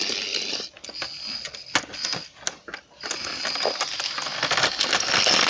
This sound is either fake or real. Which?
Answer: real